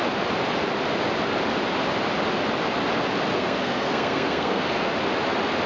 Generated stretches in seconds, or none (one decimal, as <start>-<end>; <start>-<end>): 3.3-4.9